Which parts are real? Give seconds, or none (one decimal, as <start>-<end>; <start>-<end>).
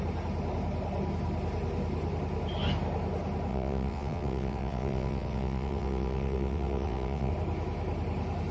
0.0-3.5; 7.3-8.5